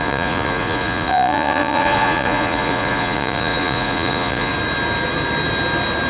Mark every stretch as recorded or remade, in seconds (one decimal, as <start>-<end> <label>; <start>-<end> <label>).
0.0-4.5 remade; 4.5-6.1 recorded